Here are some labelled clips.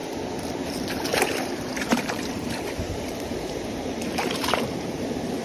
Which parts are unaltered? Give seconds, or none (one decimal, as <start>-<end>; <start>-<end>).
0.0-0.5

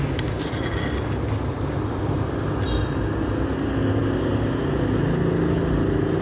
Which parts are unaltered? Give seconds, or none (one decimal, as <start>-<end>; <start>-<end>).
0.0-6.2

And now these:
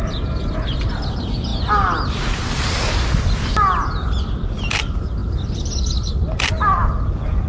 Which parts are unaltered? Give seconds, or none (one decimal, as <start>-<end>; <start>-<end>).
0.0-7.5

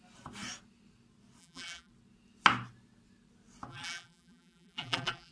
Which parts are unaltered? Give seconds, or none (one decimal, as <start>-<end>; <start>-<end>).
0.0-1.4; 1.9-3.7

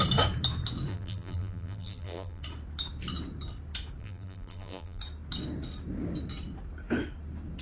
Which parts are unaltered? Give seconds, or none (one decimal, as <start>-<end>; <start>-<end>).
0.0-0.9; 2.4-4.0; 5.0-7.6